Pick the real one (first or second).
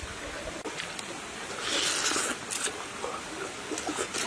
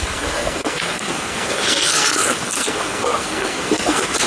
first